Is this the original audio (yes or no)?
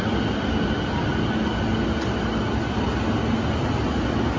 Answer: yes